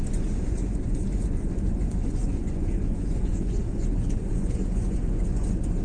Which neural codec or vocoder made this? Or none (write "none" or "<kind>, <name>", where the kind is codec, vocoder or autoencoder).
vocoder, Vocos